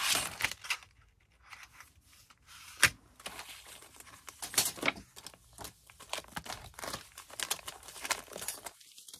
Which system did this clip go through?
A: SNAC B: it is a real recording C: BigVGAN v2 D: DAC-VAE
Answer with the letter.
B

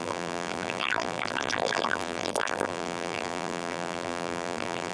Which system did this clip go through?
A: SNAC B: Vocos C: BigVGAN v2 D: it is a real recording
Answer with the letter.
C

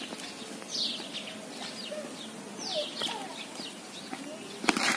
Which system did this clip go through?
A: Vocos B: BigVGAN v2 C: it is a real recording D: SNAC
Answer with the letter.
C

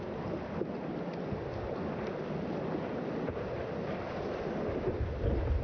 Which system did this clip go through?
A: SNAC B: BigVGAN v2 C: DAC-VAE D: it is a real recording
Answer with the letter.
D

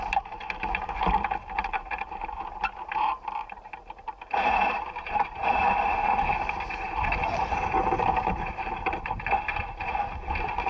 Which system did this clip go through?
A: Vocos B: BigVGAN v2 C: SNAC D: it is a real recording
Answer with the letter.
B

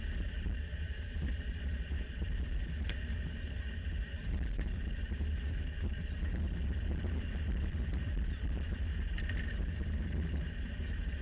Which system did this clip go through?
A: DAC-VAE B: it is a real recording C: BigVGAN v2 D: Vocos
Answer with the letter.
C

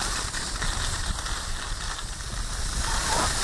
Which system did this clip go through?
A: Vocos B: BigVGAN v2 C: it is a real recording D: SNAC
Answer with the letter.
C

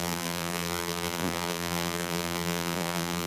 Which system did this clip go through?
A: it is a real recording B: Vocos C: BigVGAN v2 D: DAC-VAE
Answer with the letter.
C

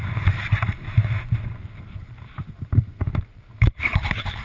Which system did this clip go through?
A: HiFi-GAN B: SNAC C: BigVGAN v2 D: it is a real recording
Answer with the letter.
C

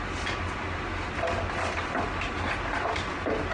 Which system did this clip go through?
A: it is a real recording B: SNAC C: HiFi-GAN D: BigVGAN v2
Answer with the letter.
A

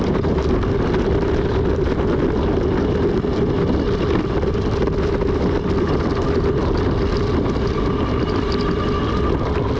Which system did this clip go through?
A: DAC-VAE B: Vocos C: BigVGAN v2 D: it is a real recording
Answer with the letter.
D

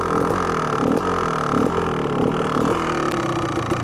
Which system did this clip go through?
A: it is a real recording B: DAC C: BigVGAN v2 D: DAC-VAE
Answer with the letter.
A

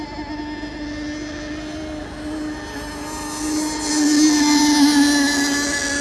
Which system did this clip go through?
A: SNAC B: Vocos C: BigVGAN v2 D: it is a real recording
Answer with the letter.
D